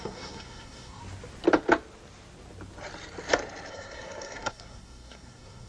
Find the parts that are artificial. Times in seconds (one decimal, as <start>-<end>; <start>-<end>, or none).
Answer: 0.0-1.0; 3.7-5.7